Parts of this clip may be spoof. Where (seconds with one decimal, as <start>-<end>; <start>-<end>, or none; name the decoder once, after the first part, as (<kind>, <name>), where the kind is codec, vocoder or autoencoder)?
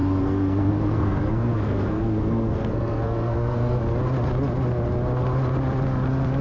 0.0-3.8 (codec, SNAC)